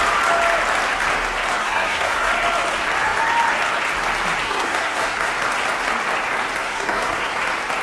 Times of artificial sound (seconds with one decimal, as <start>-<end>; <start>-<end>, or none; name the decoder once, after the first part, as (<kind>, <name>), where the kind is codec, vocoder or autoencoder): 1.6-2.3 (codec, SNAC); 4.4-5.3; 6.6-7.3